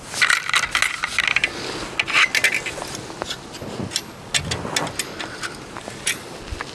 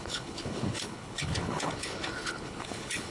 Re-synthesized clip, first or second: second